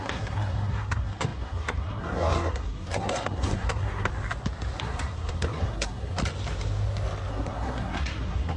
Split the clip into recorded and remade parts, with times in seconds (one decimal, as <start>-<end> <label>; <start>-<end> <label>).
0.0-4.1 remade; 4.1-4.8 recorded; 4.8-6.2 remade; 6.2-7.3 recorded; 7.3-8.6 remade